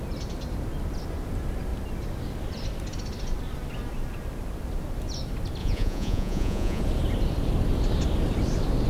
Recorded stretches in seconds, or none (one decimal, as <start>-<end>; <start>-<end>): 0.0-5.6; 6.8-8.9